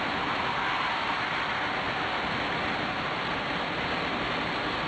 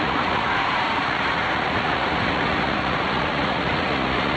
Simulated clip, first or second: second